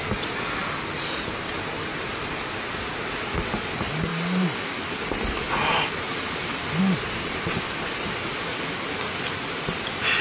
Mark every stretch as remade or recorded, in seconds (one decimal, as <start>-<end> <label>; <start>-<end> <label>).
0.0-10.2 recorded